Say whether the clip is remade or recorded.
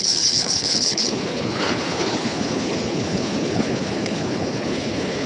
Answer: remade